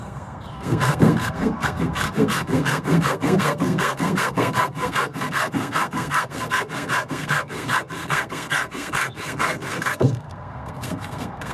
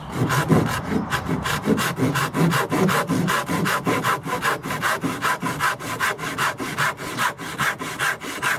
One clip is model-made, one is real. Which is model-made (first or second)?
first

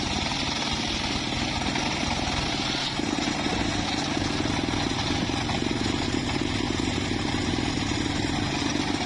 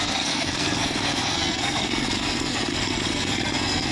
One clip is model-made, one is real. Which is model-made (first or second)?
second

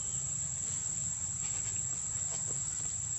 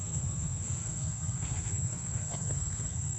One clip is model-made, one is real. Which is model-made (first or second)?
second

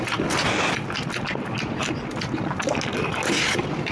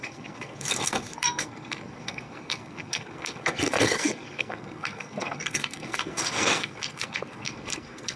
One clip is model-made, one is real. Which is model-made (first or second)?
second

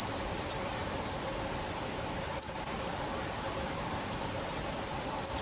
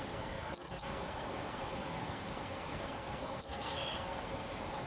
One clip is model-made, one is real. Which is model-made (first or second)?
second